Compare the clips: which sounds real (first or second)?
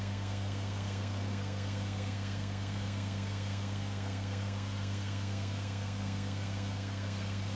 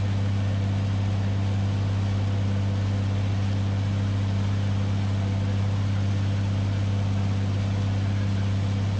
second